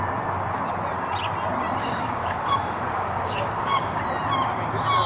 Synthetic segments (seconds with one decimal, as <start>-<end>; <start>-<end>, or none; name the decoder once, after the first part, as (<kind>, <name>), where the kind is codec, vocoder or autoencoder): 1.8-4.0 (codec, DAC)